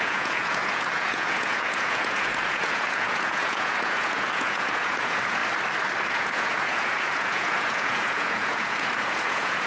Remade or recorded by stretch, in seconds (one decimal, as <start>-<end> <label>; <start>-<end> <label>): 0.0-5.4 remade; 5.4-6.1 recorded; 6.1-9.7 remade